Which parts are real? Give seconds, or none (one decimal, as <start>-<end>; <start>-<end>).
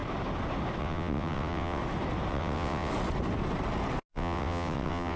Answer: 0.0-0.8; 1.8-2.3; 2.9-4.1